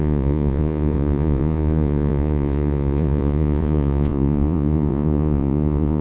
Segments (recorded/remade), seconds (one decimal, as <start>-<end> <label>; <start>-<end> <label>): 0.0-6.0 remade